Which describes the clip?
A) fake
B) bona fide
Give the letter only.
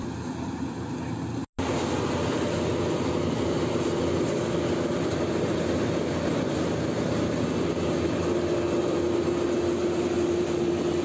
B